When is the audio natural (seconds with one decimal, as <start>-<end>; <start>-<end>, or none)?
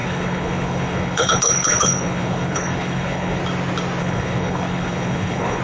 3.4-4.0